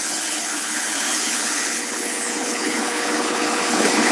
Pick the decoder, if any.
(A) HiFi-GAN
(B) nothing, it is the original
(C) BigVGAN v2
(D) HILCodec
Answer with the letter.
D